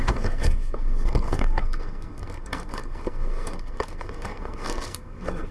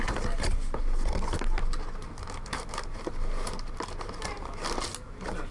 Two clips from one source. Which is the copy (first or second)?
first